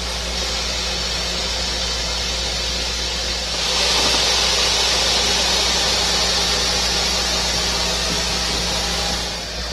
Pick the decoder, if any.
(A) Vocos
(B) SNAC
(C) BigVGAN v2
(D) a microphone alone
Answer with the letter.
D